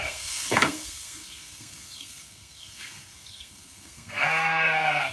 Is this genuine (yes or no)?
no